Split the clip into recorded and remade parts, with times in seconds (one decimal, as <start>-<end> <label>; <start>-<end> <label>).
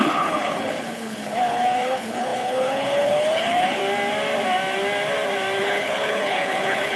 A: 0.0-3.8 remade; 3.8-5.6 recorded; 5.6-7.0 remade